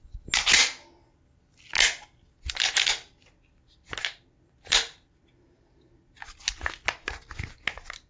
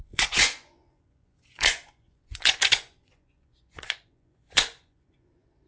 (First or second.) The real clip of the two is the first